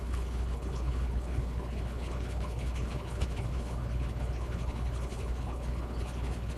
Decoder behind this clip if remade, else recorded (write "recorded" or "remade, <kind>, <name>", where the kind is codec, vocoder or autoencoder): remade, codec, HILCodec